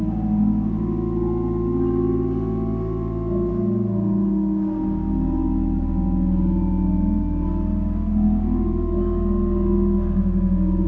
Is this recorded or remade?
recorded